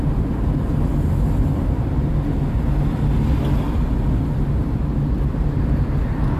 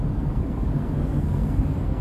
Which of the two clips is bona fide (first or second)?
first